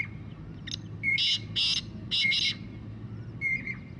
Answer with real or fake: real